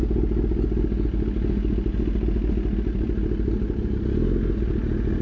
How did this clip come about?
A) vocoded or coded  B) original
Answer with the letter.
B